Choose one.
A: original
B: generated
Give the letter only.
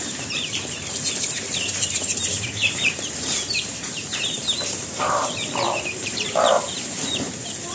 B